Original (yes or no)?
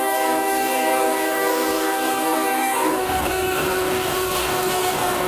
no